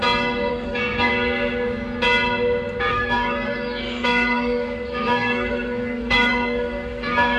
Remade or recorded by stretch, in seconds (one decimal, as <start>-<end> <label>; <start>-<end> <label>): 0.0-0.5 recorded; 0.5-1.1 remade; 1.1-2.9 recorded; 2.9-7.4 remade